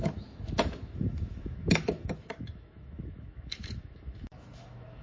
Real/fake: fake